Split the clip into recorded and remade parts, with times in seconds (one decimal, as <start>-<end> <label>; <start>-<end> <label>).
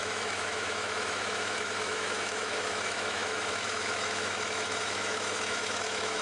0.0-6.2 remade